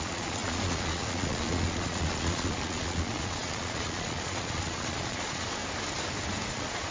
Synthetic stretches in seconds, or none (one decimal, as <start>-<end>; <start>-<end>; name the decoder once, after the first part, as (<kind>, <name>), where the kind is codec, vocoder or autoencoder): 0.0-5.6 (vocoder, Vocos); 6.5-6.9